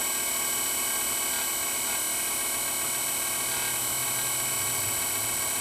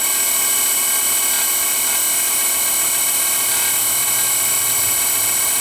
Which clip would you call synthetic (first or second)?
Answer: second